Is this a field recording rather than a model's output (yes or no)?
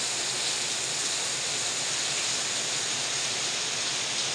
yes